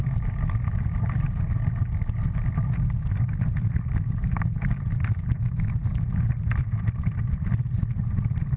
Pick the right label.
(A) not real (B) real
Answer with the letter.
B